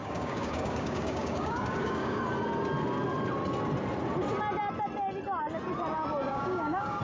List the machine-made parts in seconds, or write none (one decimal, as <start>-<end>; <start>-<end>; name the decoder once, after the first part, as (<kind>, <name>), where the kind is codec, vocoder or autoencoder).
0.0-2.2 (codec, DAC); 6.3-7.0